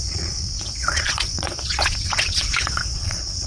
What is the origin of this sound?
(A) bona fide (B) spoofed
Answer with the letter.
B